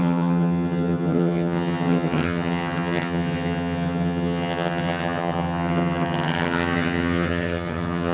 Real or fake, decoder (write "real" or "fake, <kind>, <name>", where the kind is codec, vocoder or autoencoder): fake, vocoder, HiFi-GAN